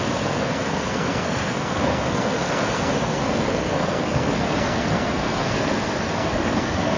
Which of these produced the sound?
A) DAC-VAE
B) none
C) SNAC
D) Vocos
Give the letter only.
C